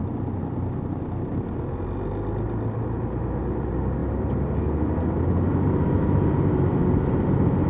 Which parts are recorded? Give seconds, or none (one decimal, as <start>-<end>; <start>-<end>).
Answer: 0.0-7.7